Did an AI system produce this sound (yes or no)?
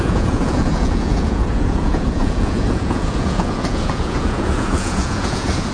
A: yes